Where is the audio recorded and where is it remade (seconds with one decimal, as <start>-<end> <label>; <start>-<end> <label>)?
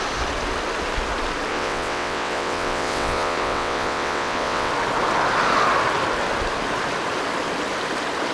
0.0-1.5 recorded; 1.5-4.7 remade; 4.7-8.3 recorded